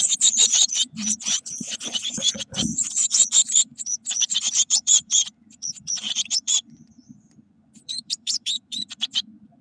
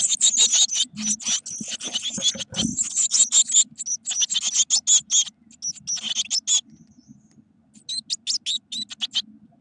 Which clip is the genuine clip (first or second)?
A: second